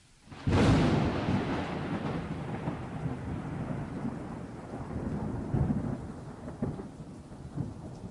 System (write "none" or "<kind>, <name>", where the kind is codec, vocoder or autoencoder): none